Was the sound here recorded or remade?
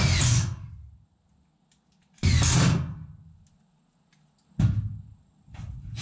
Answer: recorded